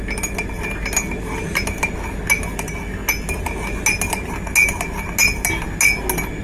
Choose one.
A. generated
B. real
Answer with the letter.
B